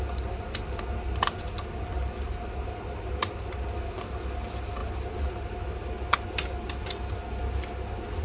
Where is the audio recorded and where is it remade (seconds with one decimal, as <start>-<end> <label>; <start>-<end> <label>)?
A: 0.0-8.2 recorded